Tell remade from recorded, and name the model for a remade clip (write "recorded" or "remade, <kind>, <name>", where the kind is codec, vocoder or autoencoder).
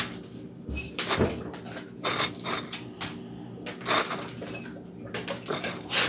recorded